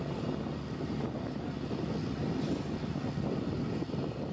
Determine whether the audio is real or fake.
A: real